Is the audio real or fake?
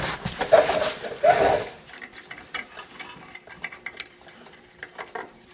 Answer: fake